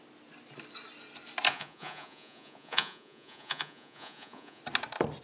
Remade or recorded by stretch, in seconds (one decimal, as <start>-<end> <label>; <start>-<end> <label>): 0.0-1.5 recorded; 1.5-4.6 remade; 4.6-5.2 recorded